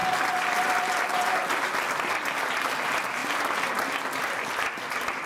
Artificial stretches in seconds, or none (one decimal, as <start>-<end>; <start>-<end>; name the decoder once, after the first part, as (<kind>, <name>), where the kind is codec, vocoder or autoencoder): none